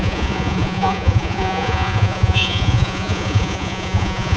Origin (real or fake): fake